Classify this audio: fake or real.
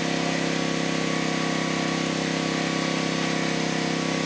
real